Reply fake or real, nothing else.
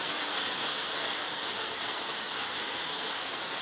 fake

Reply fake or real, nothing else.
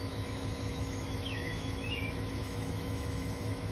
fake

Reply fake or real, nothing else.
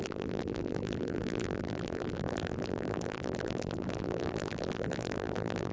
fake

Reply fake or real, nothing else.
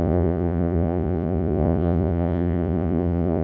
fake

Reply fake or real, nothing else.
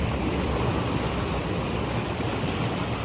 real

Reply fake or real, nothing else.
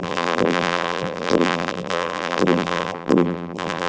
fake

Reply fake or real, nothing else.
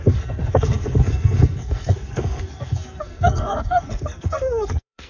fake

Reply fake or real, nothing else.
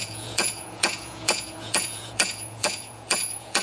fake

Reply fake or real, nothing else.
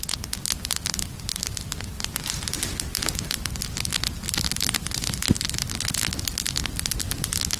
real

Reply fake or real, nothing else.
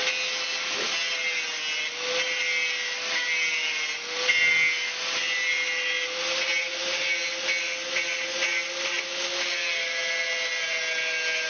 real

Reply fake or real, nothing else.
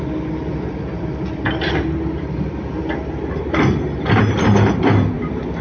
fake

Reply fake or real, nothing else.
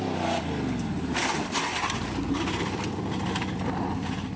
real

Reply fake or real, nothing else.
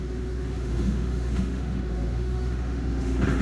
fake